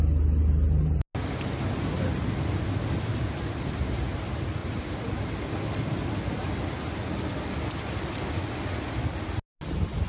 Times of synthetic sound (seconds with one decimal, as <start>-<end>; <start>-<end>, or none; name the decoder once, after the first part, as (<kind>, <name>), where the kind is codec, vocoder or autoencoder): 4.6-5.4 (vocoder, BigVGAN v2)